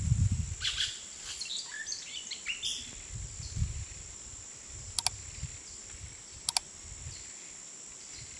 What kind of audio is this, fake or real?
real